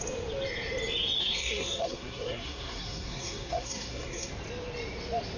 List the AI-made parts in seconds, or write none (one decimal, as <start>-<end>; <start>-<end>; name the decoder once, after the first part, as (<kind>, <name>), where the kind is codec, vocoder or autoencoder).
1.2-4.3 (codec, SNAC)